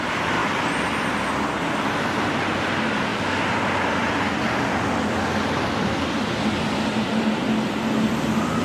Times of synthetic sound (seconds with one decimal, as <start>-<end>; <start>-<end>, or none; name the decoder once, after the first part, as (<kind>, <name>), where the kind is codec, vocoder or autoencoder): none